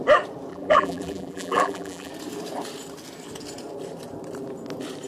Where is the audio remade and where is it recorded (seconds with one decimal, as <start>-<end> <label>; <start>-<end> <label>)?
0.0-0.5 recorded; 0.5-2.1 remade; 2.1-5.1 recorded